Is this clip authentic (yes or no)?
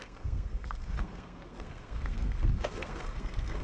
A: no